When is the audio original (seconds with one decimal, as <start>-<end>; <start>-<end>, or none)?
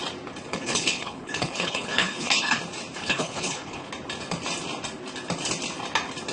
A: 0.0-0.5; 2.6-3.0; 3.9-6.3